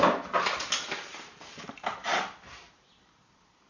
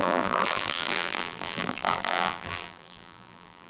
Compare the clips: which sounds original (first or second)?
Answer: first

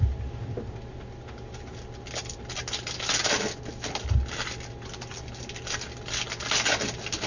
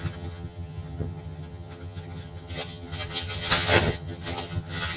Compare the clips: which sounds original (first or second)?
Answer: first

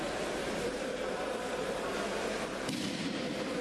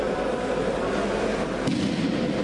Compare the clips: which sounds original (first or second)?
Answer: second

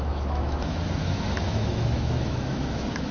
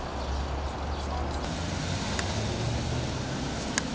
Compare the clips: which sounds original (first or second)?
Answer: second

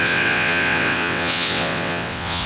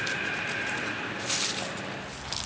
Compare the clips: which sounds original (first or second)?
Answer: second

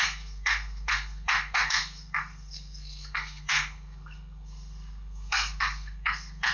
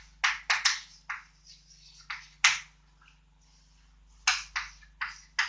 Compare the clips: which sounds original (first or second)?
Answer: second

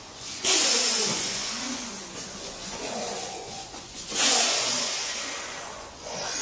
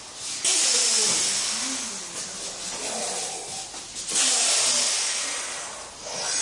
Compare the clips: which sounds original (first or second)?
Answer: second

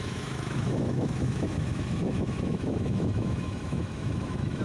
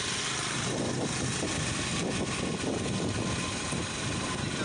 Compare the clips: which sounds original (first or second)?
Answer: second